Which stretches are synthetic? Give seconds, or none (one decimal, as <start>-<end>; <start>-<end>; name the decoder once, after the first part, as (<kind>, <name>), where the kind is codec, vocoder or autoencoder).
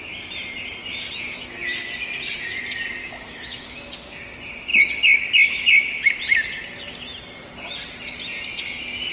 0.8-1.8 (autoencoder, DAC-VAE); 3.0-4.2